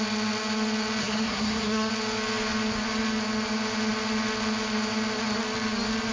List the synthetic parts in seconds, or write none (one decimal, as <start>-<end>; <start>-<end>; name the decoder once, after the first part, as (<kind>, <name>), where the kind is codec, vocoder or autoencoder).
1.0-1.9 (codec, SNAC)